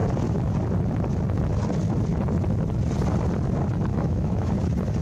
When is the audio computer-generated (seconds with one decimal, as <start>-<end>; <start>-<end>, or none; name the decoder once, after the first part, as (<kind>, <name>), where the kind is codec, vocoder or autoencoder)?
3.9-4.5 (autoencoder, DAC-VAE)